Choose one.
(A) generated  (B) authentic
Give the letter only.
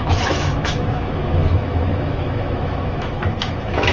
A